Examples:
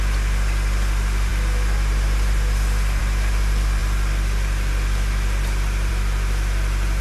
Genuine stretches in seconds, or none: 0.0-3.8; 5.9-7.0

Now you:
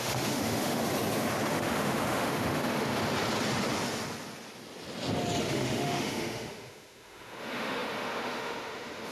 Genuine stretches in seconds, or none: 0.8-1.5; 2.9-5.4

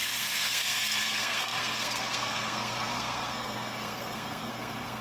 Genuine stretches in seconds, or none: none

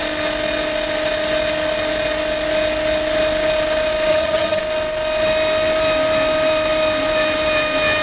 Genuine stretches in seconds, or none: 0.0-4.1; 4.6-8.0